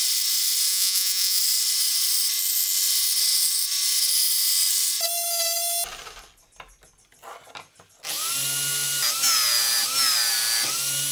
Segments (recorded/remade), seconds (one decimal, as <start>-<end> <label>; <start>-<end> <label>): 0.0-0.7 recorded; 0.7-1.4 remade; 1.4-11.1 recorded